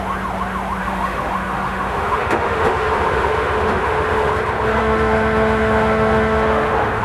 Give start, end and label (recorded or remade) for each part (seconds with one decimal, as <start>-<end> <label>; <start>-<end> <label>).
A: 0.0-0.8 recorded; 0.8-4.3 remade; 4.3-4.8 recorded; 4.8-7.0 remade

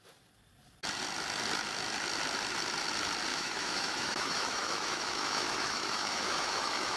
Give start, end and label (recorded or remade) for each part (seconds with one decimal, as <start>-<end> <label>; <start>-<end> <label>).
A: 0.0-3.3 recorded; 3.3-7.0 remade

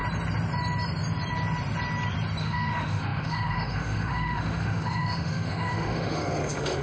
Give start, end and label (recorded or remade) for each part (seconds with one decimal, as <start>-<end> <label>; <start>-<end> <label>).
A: 0.0-2.4 recorded; 2.4-6.8 remade

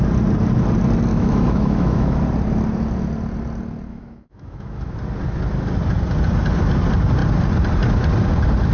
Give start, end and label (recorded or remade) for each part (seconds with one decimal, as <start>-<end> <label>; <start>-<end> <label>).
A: 0.0-1.1 recorded; 1.1-2.2 remade; 2.2-3.9 recorded; 3.9-4.9 remade; 4.9-8.7 recorded

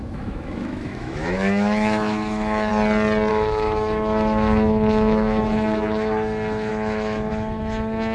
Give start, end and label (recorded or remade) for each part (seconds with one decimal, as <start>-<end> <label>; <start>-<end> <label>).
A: 0.0-2.7 remade; 2.7-3.3 recorded; 3.3-8.1 remade

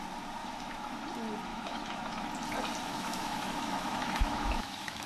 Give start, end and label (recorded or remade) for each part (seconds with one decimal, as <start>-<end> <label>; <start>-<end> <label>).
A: 0.0-0.4 recorded; 0.4-1.0 remade; 1.0-1.5 recorded; 1.5-2.3 remade; 2.3-2.9 recorded; 2.9-5.1 remade

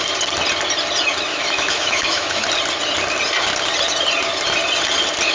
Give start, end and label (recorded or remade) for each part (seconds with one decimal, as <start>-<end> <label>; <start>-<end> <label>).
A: 0.0-1.3 recorded; 1.3-2.5 remade; 2.5-5.3 recorded

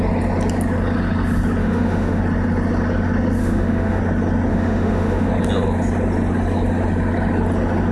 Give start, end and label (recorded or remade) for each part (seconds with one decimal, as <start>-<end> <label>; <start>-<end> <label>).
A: 0.0-1.6 recorded; 1.6-2.2 remade; 2.2-3.4 recorded; 3.4-4.0 remade; 4.0-4.5 recorded; 4.5-5.3 remade; 5.3-7.9 recorded